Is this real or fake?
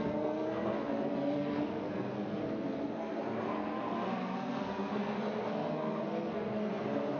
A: fake